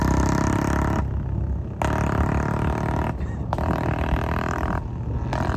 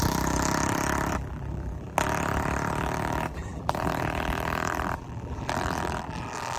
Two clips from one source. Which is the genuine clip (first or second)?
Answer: first